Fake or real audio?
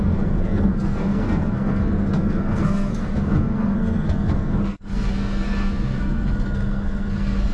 fake